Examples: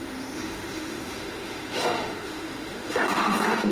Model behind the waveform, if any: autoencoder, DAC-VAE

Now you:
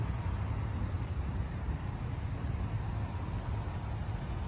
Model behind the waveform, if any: none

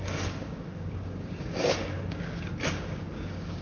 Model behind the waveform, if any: codec, DAC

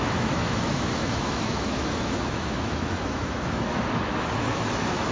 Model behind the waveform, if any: autoencoder, DAC-VAE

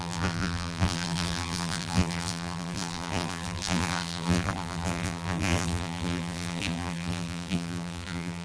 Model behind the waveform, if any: vocoder, BigVGAN v2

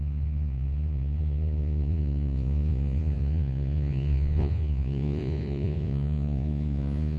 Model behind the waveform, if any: vocoder, Vocos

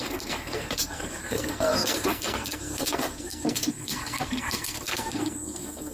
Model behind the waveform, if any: codec, SNAC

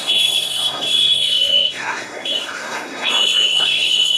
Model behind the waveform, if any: codec, SNAC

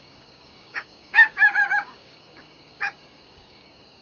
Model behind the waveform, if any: codec, DAC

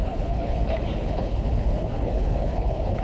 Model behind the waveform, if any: codec, HILCodec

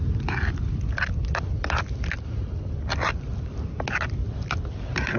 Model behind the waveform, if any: none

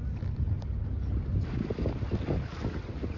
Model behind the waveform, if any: none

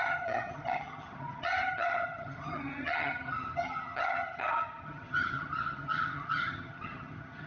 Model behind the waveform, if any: vocoder, HiFi-GAN